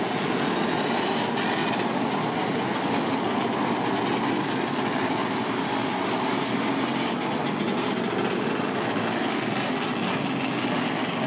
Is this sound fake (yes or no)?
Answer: no